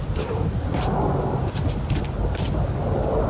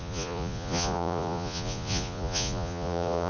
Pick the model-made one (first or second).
second